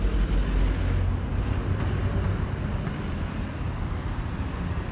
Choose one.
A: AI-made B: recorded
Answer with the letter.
B